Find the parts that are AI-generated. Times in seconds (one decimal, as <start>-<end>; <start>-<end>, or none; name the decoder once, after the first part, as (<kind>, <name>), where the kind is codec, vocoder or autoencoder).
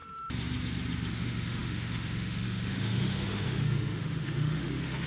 1.1-5.1 (autoencoder, DAC-VAE)